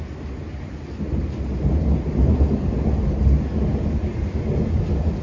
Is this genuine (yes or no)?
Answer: yes